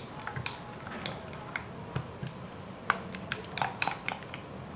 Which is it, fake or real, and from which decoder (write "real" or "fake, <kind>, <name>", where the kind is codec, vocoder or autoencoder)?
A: real